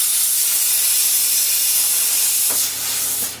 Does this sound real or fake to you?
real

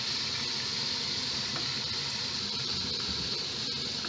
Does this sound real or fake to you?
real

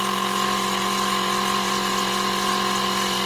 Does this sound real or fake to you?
real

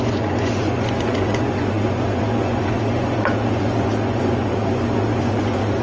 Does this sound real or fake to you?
fake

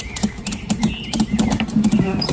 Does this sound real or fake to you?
fake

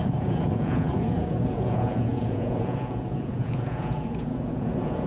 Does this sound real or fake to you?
fake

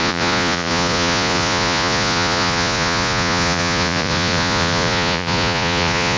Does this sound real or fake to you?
fake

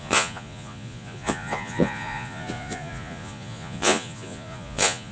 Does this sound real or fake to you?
fake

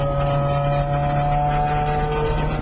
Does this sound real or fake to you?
real